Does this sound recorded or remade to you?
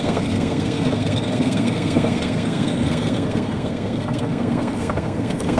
remade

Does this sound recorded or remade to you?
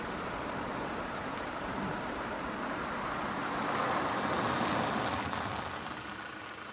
recorded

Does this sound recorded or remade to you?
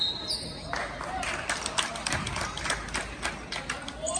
recorded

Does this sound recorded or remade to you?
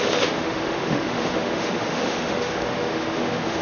remade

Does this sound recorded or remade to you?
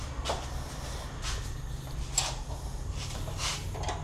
recorded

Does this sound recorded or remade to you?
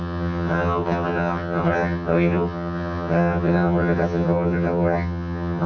remade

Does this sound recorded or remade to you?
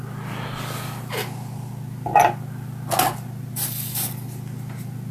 recorded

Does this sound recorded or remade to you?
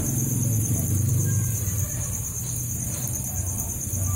remade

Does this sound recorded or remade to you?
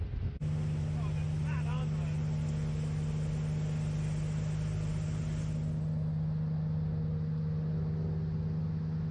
recorded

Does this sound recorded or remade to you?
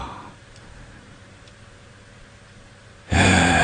remade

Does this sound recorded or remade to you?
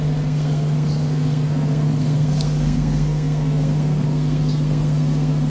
remade